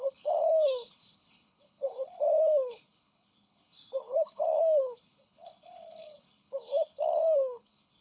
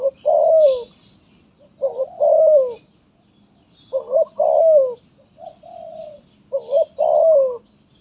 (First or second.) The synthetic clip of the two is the first